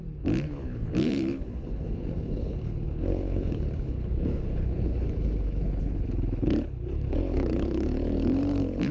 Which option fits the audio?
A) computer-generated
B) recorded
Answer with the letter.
A